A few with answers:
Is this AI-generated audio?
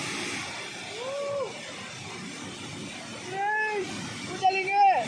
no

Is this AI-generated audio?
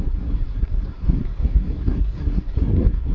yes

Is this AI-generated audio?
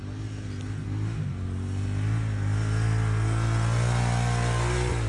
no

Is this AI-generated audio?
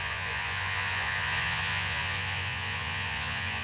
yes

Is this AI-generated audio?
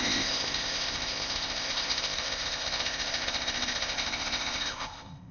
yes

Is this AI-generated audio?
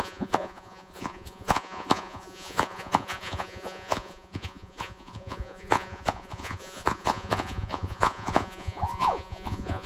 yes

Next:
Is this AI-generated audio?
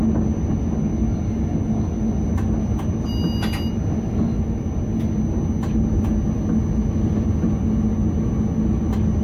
no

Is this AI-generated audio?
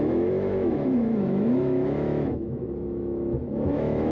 yes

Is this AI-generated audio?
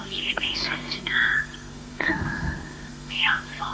yes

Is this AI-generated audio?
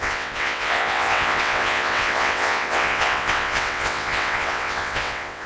yes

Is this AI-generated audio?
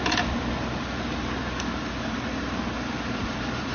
no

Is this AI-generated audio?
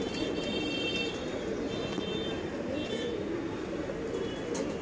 no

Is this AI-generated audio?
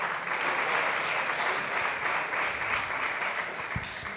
no